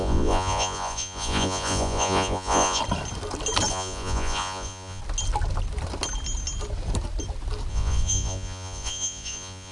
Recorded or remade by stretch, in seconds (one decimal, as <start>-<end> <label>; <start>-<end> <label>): 0.0-2.8 remade; 2.8-3.7 recorded; 3.7-5.0 remade; 5.0-7.7 recorded; 7.7-9.7 remade